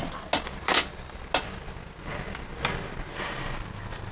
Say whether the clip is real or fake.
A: real